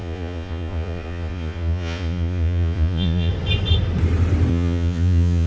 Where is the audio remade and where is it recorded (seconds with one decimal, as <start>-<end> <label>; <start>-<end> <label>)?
0.0-3.3 remade; 3.3-4.5 recorded; 4.5-5.5 remade